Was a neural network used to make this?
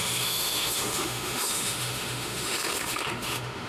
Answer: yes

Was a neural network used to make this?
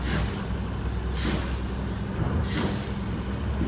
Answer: no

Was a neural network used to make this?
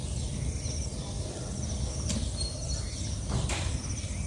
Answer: no